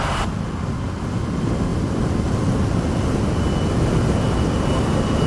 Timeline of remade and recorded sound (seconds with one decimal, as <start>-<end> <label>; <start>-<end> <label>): 0.0-5.3 recorded